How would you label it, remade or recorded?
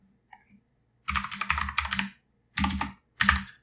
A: recorded